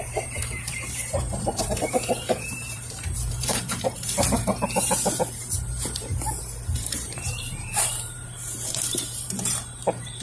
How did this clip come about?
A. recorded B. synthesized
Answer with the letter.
B